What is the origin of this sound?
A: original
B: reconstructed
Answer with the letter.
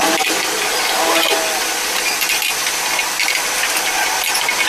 A